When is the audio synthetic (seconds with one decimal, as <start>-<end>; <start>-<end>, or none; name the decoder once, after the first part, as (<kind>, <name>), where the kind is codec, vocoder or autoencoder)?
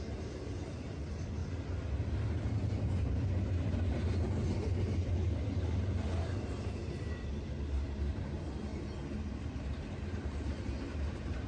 0.0-1.4 (vocoder, BigVGAN v2); 4.5-8.7; 9.3-11.5